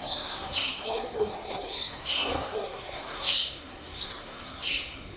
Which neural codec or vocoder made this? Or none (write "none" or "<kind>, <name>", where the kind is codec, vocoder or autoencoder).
codec, SNAC